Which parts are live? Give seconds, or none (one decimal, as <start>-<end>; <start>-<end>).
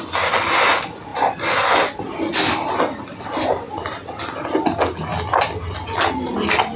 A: 0.0-6.8